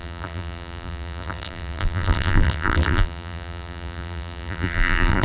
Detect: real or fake fake